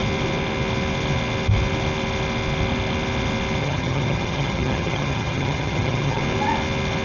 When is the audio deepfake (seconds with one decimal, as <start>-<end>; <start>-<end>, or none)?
3.6-6.2